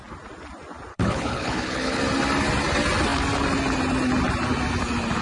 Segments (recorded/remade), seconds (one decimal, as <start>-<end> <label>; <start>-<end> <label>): 0.0-0.9 recorded; 0.9-2.0 remade; 2.0-5.2 recorded